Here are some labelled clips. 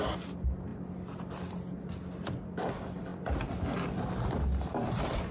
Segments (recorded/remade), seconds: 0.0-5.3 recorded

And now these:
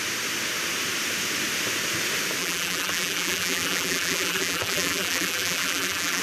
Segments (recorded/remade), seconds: 0.0-2.4 recorded; 2.4-6.2 remade

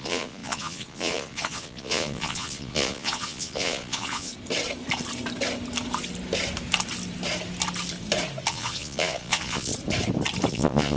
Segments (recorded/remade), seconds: 0.0-4.3 remade; 4.3-8.5 recorded; 8.5-9.7 remade; 9.7-10.5 recorded; 10.5-11.0 remade

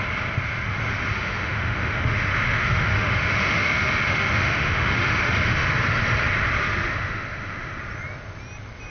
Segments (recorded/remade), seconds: 0.0-1.1 recorded; 1.1-5.7 remade; 5.7-6.9 recorded; 6.9-7.8 remade; 7.8-8.9 recorded

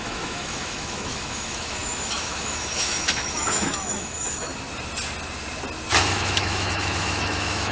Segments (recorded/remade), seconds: 0.0-4.5 remade; 4.5-6.1 recorded; 6.1-7.7 remade

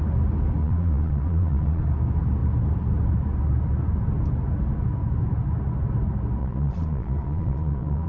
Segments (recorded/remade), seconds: 0.0-0.6 recorded; 0.6-1.8 remade; 1.8-6.4 recorded; 6.4-8.1 remade

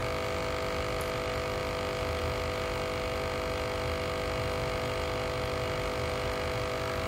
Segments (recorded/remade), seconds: 0.0-7.1 recorded